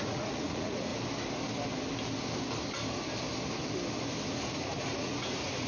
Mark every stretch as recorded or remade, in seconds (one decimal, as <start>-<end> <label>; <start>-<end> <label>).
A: 0.0-0.9 remade; 0.9-4.3 recorded; 4.3-5.7 remade